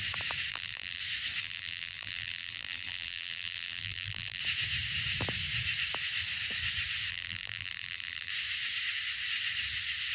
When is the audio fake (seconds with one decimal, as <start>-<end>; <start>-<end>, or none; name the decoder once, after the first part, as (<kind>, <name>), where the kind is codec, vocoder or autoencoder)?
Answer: 0.5-1.0 (vocoder, BigVGAN v2); 1.4-4.4; 7.1-8.3